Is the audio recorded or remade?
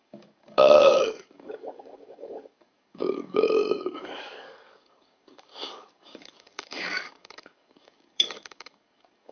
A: remade